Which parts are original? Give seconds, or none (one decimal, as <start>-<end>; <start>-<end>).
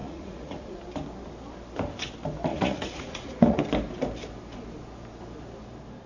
0.8-2.5; 3.6-6.1